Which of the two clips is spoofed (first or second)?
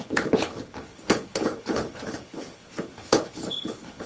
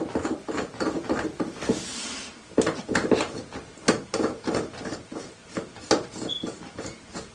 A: first